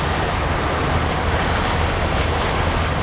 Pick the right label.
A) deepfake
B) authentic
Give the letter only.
B